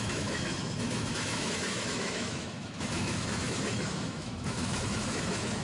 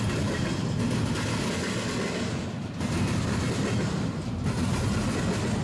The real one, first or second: second